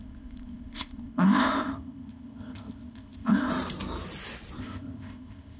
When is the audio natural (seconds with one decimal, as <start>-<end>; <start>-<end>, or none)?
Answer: 3.5-4.6